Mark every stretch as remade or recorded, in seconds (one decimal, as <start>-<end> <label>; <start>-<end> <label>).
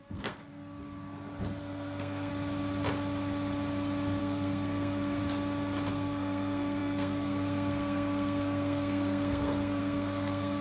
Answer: 0.0-0.5 remade; 0.5-1.6 recorded; 1.6-2.3 remade; 2.3-4.2 recorded; 4.2-5.2 remade; 5.2-5.9 recorded; 5.9-10.6 remade